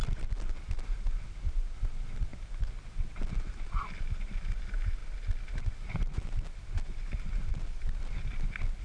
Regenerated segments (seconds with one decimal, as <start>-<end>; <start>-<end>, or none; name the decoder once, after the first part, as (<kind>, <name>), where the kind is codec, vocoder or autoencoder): none